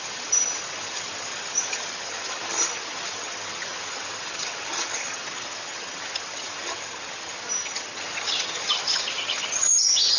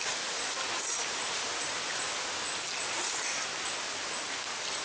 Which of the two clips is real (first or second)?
second